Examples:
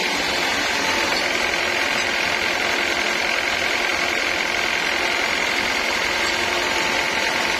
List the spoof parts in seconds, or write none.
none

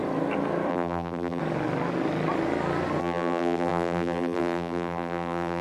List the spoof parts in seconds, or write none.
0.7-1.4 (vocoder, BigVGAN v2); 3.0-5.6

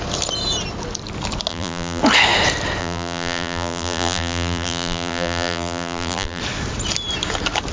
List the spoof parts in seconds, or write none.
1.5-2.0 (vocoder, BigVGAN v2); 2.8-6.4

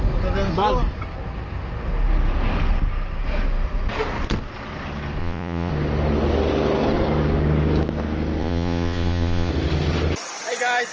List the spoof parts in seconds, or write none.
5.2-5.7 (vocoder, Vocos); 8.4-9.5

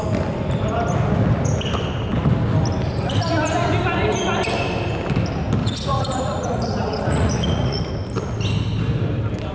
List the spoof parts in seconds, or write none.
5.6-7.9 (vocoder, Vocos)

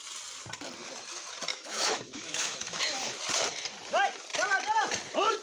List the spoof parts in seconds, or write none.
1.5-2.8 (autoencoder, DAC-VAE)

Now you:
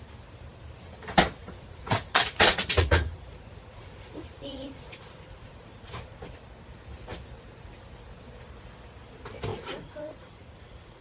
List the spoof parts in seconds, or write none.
1.4-6.2 (vocoder, Vocos); 9.5-11.0